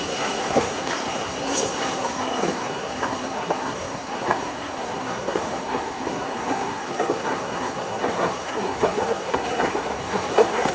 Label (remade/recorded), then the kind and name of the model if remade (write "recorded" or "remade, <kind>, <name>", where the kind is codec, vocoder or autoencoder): remade, codec, SNAC